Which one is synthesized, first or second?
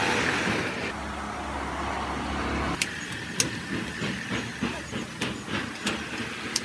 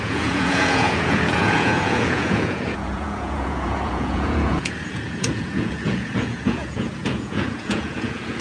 second